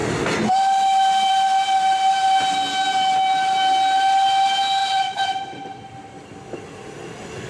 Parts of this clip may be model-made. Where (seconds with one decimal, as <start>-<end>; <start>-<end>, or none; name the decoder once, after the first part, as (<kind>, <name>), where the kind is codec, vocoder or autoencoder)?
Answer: 4.8-5.4 (vocoder, BigVGAN v2)